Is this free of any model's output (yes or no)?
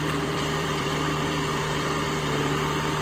no